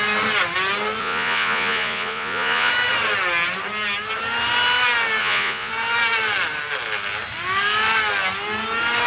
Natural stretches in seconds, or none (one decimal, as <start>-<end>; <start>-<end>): 0.0-1.0; 2.7-5.2; 5.7-9.1